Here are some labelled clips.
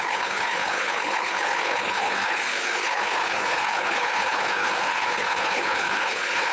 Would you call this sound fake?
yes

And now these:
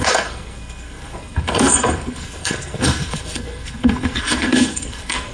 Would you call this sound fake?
yes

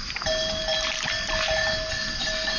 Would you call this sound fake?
no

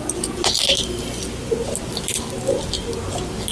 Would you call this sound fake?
no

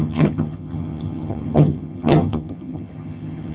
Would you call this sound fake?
yes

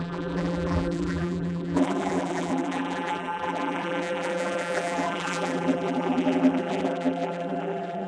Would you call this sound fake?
yes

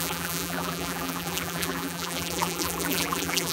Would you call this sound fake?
yes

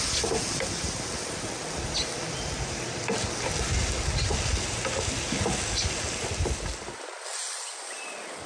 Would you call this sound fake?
no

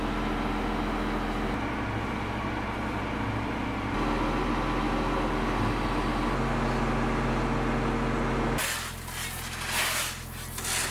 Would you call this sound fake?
no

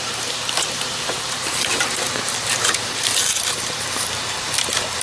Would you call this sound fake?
yes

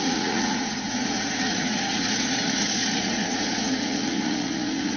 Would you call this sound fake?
yes